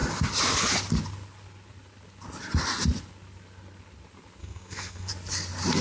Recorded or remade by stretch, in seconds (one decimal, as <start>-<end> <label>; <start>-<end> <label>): 0.0-4.4 recorded; 4.4-5.1 remade; 5.1-5.8 recorded